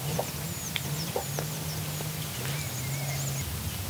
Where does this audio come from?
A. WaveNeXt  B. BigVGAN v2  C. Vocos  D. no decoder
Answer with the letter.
D